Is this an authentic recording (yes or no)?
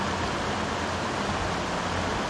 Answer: yes